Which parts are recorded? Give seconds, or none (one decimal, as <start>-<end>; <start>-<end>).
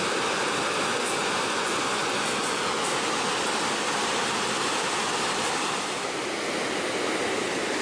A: 0.0-0.9; 2.6-7.8